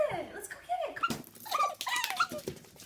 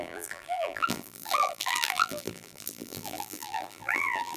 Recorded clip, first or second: first